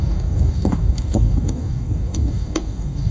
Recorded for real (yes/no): no